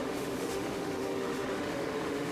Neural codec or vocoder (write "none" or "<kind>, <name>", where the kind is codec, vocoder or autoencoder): autoencoder, DAC-VAE